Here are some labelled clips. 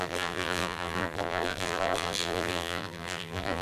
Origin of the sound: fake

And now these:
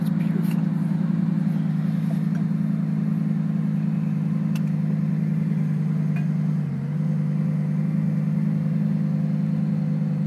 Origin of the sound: real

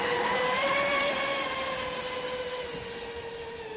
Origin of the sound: real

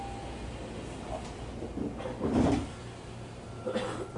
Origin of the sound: real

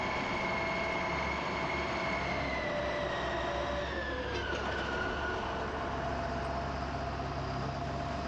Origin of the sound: real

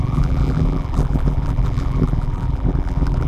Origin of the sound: fake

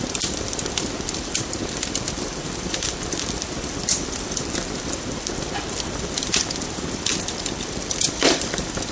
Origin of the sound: fake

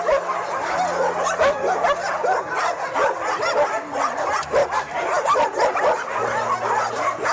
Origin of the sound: real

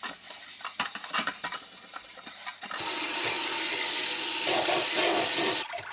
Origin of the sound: real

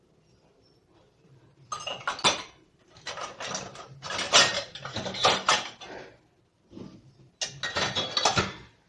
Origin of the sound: real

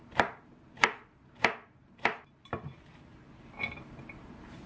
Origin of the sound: fake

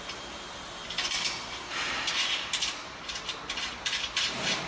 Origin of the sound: fake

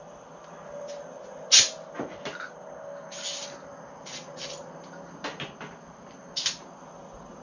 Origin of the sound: real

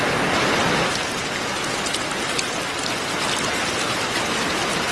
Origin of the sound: real